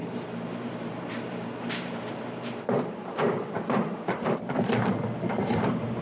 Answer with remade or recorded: remade